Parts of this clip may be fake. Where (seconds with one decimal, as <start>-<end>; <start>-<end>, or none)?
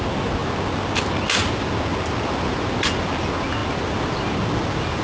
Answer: none